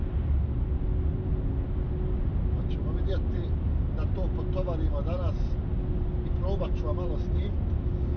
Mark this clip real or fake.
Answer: real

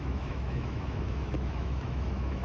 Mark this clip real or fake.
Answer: fake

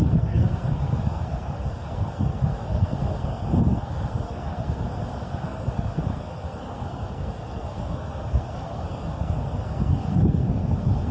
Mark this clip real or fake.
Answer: fake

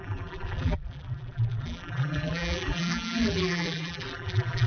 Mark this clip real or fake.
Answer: fake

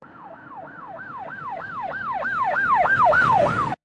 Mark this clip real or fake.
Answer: fake